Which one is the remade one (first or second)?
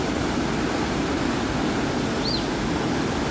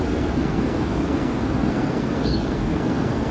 second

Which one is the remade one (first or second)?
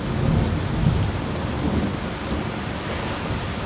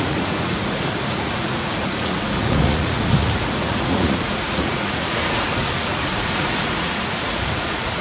second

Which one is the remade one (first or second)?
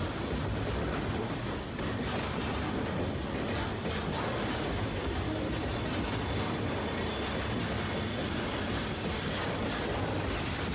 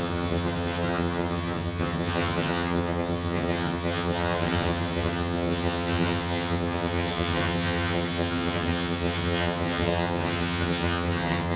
second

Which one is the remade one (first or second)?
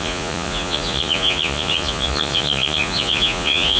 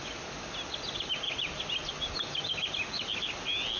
first